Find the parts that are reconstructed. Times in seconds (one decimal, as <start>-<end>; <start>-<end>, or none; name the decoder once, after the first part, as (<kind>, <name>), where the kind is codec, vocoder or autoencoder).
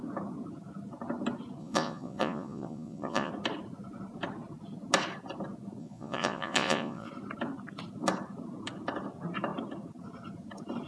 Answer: 1.6-3.3 (vocoder, Vocos); 5.8-7.1